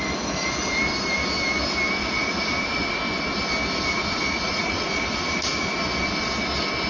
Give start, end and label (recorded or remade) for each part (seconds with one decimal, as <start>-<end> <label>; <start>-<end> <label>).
0.0-2.0 recorded; 2.0-3.0 remade; 3.0-4.0 recorded; 4.0-5.7 remade; 5.7-6.9 recorded